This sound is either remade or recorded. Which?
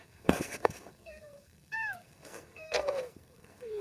remade